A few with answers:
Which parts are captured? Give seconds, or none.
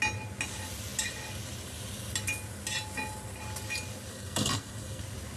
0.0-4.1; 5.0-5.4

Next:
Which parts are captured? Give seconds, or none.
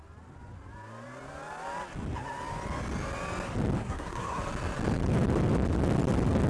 0.0-3.8; 4.4-6.5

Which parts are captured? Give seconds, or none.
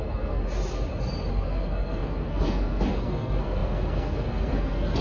0.4-1.3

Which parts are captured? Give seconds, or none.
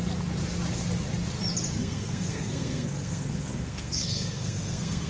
0.0-1.8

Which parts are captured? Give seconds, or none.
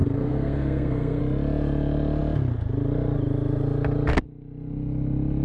1.2-5.4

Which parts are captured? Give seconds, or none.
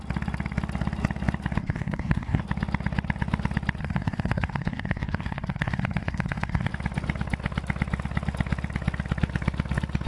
0.0-1.6; 2.4-3.8; 6.7-10.1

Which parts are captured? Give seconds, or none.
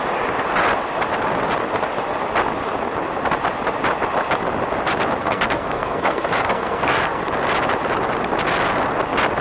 0.0-5.2; 7.2-9.4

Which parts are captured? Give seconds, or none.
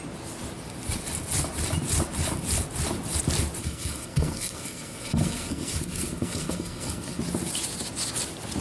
0.0-3.6; 7.2-8.6